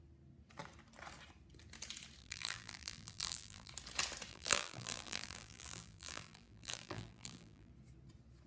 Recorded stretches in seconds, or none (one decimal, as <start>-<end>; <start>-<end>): 0.0-2.2; 3.7-4.3; 7.7-8.5